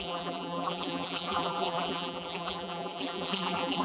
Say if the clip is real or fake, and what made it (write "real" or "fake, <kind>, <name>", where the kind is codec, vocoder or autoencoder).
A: fake, vocoder, BigVGAN v2